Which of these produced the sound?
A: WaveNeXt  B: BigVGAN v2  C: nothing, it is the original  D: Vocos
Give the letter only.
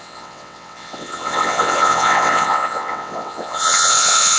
A